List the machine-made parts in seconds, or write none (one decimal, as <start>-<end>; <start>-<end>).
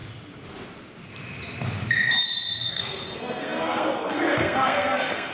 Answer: 2.7-5.3